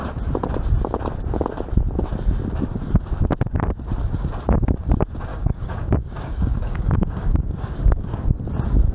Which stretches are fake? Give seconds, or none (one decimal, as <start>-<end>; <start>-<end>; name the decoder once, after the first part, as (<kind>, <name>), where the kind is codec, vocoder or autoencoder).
5.3-8.3 (codec, DAC)